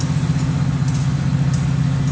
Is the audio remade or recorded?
recorded